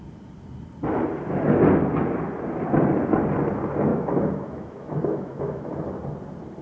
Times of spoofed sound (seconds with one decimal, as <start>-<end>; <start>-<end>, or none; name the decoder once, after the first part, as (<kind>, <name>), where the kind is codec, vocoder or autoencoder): 3.9-5.7 (autoencoder, DAC-VAE)